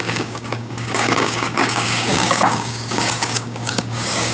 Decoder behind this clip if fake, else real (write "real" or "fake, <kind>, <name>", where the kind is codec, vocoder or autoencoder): fake, codec, DAC